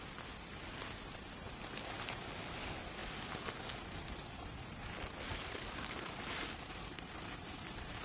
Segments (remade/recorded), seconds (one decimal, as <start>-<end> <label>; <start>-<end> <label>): 0.0-5.3 recorded; 5.3-7.1 remade; 7.1-8.0 recorded